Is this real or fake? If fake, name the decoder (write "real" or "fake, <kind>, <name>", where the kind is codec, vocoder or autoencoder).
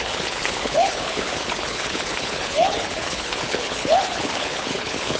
fake, codec, HILCodec